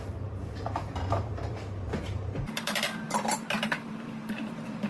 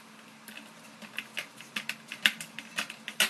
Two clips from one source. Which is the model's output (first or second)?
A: first